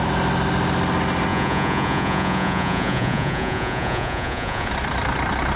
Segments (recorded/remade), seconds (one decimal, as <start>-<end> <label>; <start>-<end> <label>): 0.0-1.3 recorded; 1.3-4.7 remade; 4.7-5.6 recorded